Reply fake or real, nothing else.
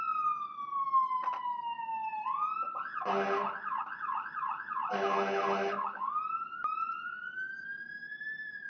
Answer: real